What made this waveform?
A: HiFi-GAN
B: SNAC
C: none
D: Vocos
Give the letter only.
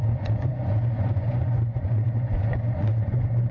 D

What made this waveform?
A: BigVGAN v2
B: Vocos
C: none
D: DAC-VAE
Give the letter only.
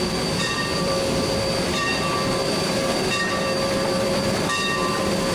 A